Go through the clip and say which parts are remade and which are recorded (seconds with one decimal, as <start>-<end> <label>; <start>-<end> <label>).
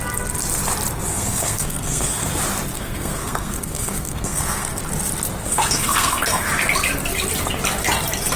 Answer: 0.0-1.1 recorded; 1.1-2.3 remade; 2.3-2.7 recorded; 2.7-4.8 remade; 4.8-5.4 recorded; 5.4-6.5 remade; 6.5-8.4 recorded